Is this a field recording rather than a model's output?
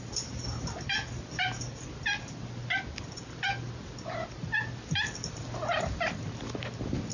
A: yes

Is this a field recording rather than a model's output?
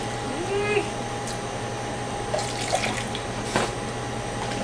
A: yes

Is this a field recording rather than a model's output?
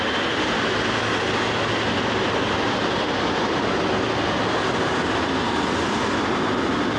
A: yes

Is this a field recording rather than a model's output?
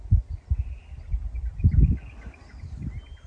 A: yes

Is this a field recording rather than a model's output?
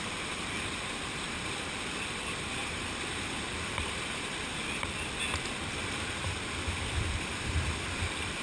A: no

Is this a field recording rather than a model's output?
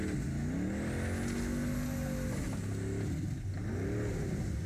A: yes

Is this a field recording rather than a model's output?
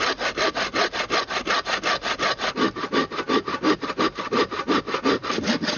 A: yes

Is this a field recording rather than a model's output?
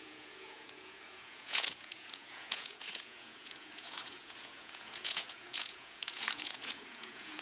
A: no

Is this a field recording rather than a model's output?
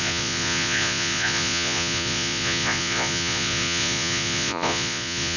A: no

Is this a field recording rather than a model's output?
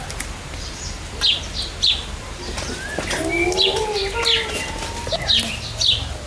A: yes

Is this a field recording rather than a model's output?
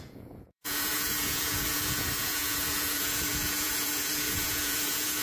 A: no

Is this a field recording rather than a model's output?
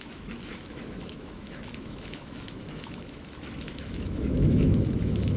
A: no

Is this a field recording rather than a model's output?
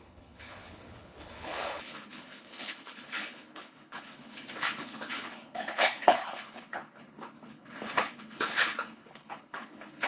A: no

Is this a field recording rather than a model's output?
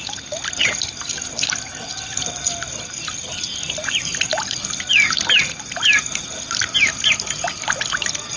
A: yes